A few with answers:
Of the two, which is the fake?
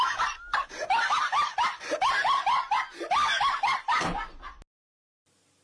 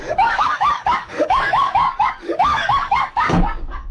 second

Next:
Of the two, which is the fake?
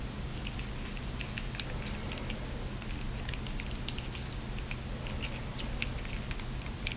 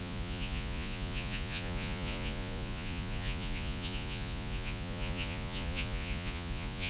second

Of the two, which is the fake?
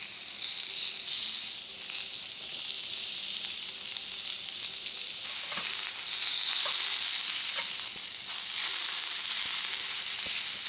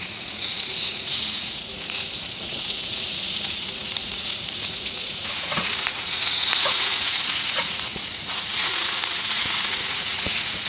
second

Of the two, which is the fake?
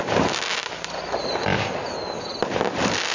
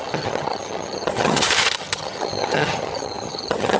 second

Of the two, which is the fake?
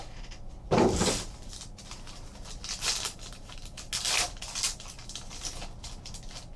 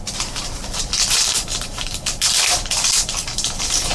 second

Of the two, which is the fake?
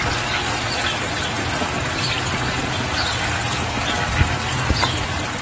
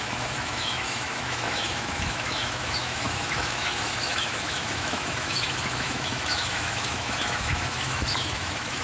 second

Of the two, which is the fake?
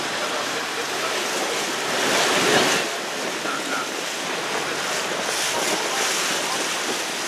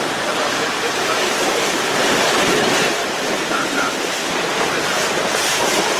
second